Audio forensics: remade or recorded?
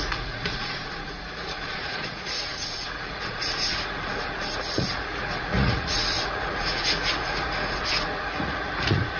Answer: remade